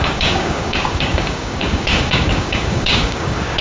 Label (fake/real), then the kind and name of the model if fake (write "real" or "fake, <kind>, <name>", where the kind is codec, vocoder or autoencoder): fake, codec, DAC